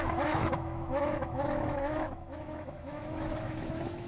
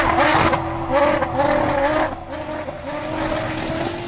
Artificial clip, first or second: first